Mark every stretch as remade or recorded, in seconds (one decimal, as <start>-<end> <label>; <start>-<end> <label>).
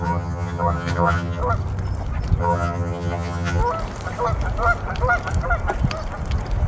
0.0-1.4 remade; 1.4-2.4 recorded; 2.4-3.6 remade; 3.6-6.7 recorded